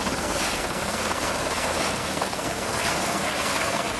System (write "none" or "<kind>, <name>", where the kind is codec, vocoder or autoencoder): codec, SNAC